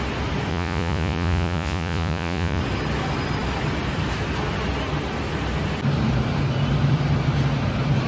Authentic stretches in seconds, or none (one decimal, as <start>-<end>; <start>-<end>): 0.0-0.5; 2.6-8.1